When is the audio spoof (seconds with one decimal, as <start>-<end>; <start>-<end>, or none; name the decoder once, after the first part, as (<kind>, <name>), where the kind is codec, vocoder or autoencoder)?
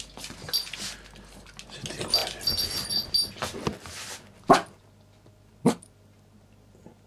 none